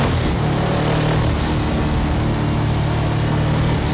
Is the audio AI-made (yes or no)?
no